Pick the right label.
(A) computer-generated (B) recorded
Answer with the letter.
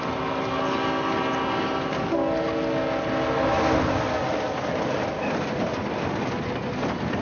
B